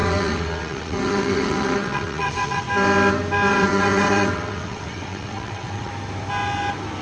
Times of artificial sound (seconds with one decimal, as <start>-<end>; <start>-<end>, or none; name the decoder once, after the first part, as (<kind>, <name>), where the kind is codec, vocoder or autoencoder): 0.0-2.7 (vocoder, WaveNeXt); 3.5-5.9